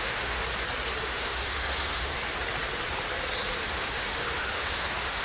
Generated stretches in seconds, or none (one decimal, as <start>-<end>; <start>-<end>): 0.0-0.4; 1.0-2.1; 3.7-5.2